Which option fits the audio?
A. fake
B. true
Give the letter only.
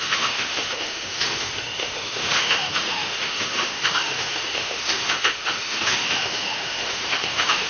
A